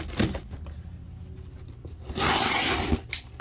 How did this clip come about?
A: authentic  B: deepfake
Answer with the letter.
A